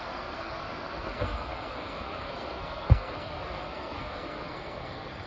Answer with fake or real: fake